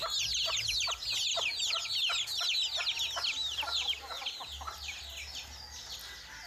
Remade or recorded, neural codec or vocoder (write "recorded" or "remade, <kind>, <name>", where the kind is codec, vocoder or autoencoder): recorded